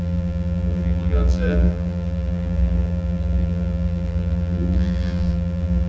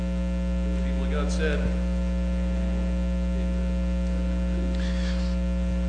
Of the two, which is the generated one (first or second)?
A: first